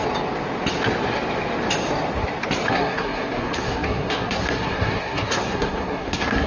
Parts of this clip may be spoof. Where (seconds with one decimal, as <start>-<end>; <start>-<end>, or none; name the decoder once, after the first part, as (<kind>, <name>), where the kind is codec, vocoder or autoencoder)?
2.7-6.5 (codec, SNAC)